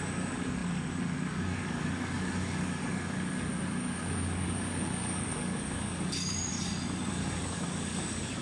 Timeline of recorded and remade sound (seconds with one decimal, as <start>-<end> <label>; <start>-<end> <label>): 0.0-6.5 remade; 6.5-7.1 recorded; 7.1-8.4 remade